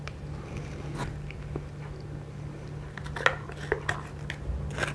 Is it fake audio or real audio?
real